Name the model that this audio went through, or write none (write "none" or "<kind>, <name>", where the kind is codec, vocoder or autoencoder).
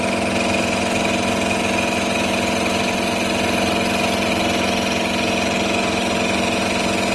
none